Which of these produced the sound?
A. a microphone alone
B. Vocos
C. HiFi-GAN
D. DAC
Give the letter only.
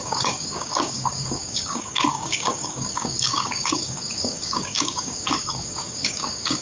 D